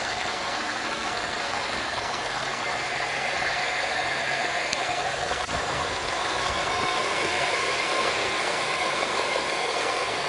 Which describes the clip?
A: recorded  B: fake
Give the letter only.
B